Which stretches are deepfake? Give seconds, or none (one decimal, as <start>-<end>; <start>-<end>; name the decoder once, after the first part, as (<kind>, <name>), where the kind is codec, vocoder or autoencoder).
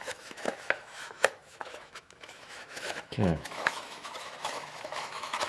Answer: 0.0-5.5 (autoencoder, DAC-VAE)